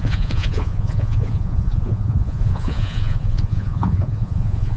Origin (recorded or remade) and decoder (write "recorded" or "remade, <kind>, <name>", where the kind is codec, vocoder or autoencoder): remade, vocoder, Vocos